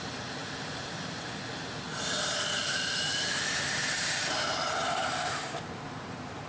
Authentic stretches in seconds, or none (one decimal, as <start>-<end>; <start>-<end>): 0.0-0.4; 1.3-2.6